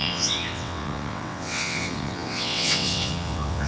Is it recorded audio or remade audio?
remade